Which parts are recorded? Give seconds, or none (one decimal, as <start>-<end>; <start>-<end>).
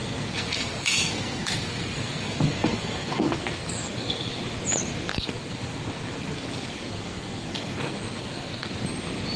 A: 4.4-5.1; 8.7-9.4